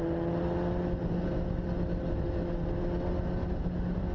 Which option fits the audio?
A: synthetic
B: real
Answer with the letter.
B